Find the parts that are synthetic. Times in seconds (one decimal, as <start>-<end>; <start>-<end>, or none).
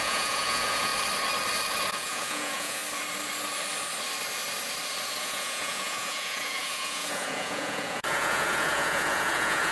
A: 0.0-0.9; 1.9-2.8; 5.2-9.7